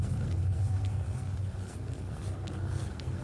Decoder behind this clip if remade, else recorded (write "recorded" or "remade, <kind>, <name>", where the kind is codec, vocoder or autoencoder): remade, codec, SNAC